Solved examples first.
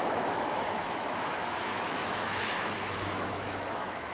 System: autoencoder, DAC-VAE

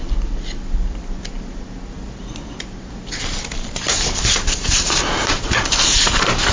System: vocoder, BigVGAN v2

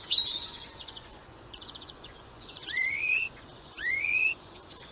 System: vocoder, Vocos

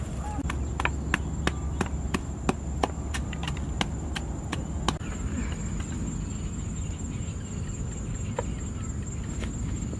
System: none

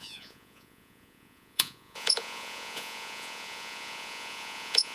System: vocoder, Vocos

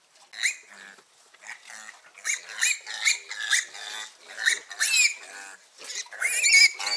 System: none